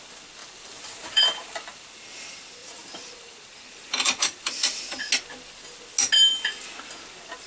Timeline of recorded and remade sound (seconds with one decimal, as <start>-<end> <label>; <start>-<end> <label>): 0.0-0.4 recorded; 0.4-1.9 remade; 1.9-2.6 recorded; 2.6-5.0 remade; 5.0-7.5 recorded